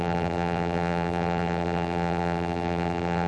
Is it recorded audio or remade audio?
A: remade